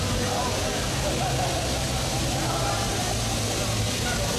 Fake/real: real